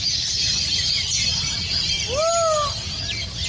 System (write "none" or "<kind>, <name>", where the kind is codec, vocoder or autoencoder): none